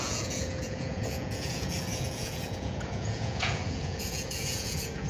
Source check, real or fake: fake